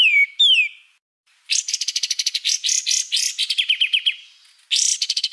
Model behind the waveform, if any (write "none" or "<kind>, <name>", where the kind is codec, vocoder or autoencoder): none